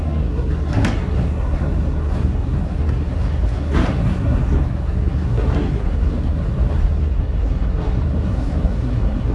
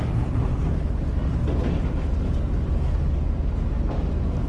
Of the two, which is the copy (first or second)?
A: first